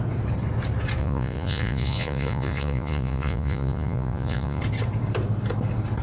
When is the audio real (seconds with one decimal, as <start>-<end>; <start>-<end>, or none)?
0.0-1.0; 4.6-6.0